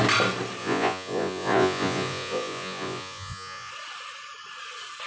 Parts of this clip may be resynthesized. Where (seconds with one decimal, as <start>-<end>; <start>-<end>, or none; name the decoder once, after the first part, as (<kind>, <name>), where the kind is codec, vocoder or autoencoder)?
0.6-3.7 (vocoder, Vocos)